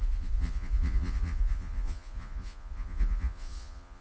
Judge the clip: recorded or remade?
remade